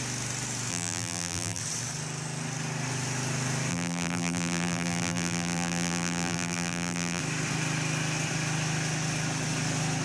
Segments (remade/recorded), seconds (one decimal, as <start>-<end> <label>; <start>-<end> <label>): 0.0-0.7 recorded; 0.7-1.6 remade; 1.6-3.7 recorded; 3.7-7.2 remade; 7.2-10.0 recorded